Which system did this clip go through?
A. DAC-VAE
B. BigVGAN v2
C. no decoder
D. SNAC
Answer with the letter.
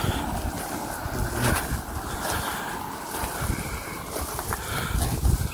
B